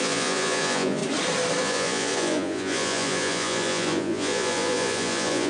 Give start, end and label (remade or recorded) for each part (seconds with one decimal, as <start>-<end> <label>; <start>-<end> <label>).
0.0-1.0 remade; 1.0-1.6 recorded; 1.6-5.5 remade